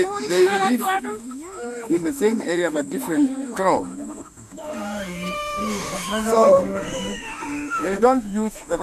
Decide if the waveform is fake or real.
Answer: fake